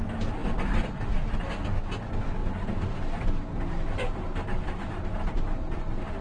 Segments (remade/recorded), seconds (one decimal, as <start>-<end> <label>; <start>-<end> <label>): 0.0-6.2 recorded